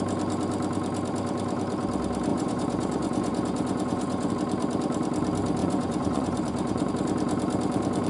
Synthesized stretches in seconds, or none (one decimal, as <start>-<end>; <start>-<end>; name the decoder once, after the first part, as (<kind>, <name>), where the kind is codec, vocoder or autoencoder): 2.3-4.3 (vocoder, Vocos); 5.6-6.9